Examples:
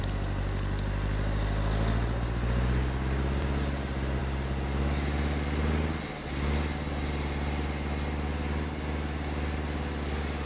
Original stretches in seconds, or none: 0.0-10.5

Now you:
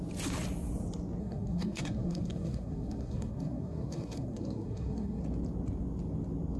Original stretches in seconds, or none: 0.0-1.2; 5.2-6.6

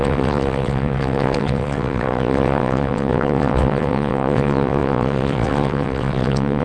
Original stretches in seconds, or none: none

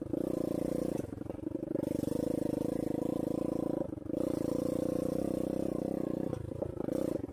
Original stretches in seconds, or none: 0.0-7.3

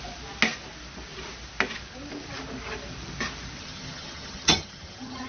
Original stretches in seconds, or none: 0.0-3.6

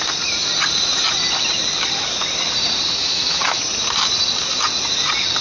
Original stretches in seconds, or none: 0.0-3.0; 3.6-5.4

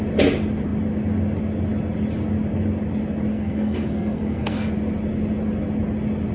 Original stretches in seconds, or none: 0.0-3.3; 4.7-6.3